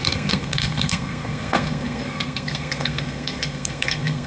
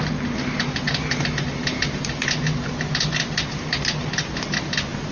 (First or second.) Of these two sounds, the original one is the second